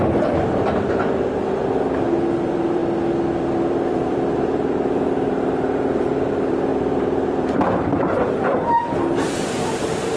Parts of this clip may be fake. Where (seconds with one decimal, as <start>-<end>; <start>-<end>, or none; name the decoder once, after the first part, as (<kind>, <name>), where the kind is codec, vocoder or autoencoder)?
0.0-1.6 (vocoder, BigVGAN v2); 2.4-2.8; 3.4-10.2